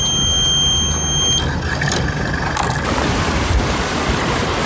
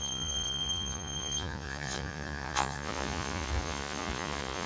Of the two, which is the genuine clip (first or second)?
first